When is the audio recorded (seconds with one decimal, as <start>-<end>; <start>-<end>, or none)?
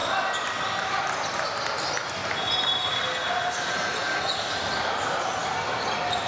0.0-2.2; 2.7-6.3